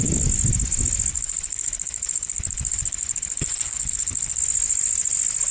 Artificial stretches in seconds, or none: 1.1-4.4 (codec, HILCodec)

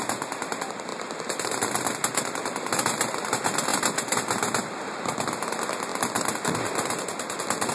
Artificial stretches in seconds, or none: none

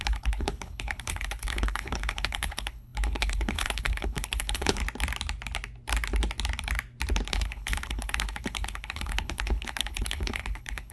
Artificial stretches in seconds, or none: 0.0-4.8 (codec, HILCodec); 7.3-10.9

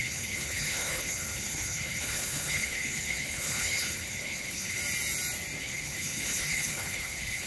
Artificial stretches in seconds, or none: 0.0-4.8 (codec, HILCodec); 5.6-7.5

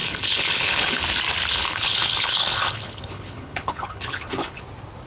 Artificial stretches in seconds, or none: 0.0-1.0 (codec, HILCodec); 1.5-4.6

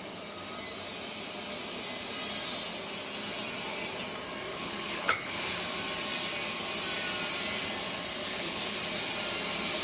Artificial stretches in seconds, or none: 4.5-5.6 (codec, HILCodec); 8.2-8.8

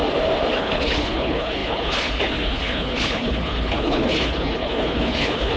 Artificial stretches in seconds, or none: 0.6-5.6 (codec, HILCodec)

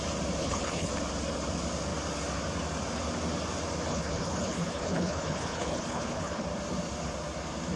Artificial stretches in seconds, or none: 0.4-0.9 (codec, HILCodec); 3.9-6.4